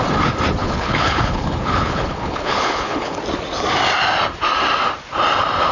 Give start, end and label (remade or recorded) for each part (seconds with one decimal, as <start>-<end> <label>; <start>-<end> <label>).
0.0-0.6 recorded; 0.6-3.2 remade; 3.2-5.7 recorded